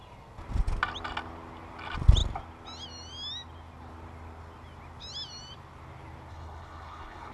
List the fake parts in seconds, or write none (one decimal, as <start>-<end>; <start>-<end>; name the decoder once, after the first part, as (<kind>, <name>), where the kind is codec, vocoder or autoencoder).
6.3-7.3 (codec, HILCodec)